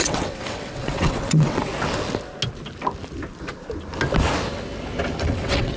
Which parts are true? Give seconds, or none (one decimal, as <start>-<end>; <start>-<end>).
1.7-5.2